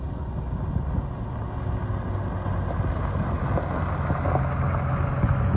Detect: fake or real real